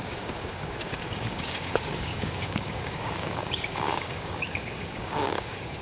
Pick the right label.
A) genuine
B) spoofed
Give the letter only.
B